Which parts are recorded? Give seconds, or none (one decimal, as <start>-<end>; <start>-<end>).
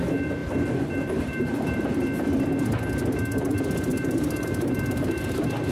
0.0-0.4; 1.9-3.9